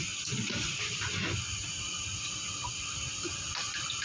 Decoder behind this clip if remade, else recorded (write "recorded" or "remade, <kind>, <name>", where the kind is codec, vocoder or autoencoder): recorded